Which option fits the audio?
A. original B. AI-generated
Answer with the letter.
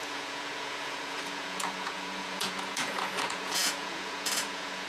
B